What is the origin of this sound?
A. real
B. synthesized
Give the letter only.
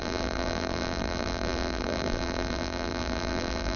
B